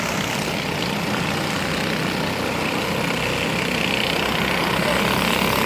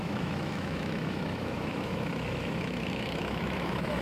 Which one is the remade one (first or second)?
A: second